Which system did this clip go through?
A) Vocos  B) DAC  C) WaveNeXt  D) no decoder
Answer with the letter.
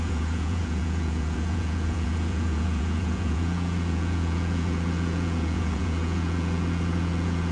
A